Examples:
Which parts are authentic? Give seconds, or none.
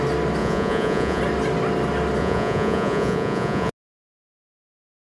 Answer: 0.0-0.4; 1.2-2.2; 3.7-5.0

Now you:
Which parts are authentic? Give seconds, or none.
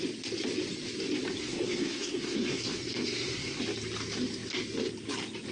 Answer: 0.0-1.4; 3.6-5.5